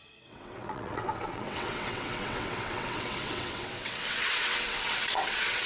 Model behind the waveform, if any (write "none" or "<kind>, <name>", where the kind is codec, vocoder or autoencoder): vocoder, WaveNeXt